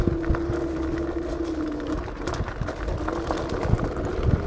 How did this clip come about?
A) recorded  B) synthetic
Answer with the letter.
A